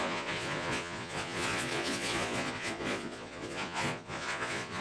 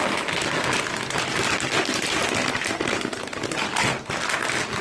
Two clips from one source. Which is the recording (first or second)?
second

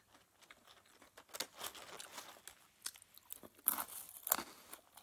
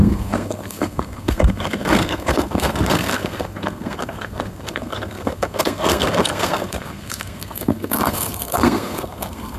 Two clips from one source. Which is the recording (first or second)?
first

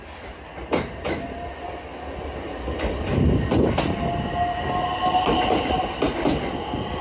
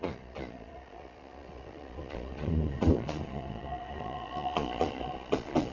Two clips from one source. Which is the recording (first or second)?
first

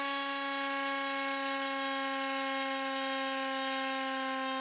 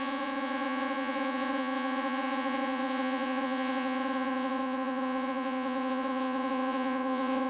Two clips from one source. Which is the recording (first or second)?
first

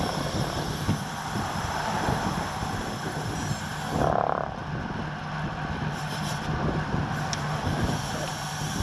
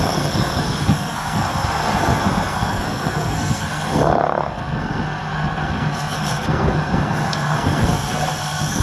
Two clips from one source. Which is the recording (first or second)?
first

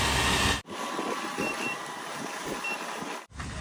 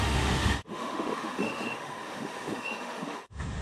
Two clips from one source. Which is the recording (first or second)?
first